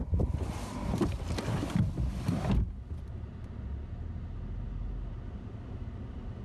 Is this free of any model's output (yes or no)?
yes